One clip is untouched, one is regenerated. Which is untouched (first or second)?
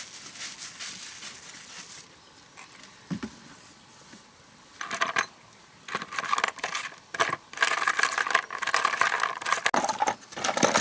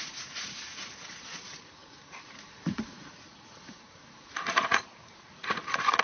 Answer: first